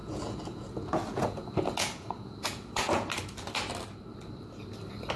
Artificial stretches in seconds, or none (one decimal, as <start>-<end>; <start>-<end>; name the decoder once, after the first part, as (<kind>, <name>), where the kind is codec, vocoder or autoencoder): 0.0-3.1 (vocoder, Vocos)